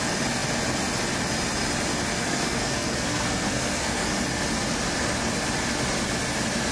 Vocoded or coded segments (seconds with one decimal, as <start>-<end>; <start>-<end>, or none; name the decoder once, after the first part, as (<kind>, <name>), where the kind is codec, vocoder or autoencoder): 2.1-4.1 (codec, SNAC)